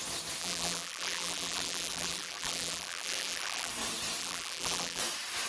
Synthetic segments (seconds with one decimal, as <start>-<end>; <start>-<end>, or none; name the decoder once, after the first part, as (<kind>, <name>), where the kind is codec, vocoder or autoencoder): 0.4-3.7 (vocoder, BigVGAN v2); 4.2-5.0